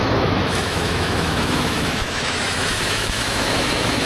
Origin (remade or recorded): remade